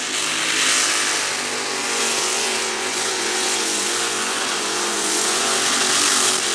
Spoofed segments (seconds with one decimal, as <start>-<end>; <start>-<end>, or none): 1.8-5.7